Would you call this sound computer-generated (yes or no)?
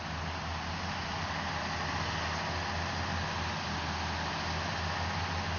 no